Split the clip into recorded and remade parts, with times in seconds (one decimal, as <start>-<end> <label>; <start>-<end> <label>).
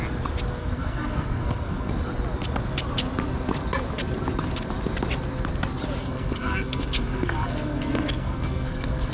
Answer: 0.0-0.6 recorded; 0.6-1.9 remade; 1.9-6.0 recorded; 6.0-9.1 remade